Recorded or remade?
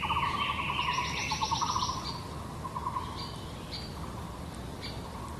recorded